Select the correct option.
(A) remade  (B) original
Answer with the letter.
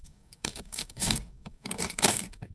A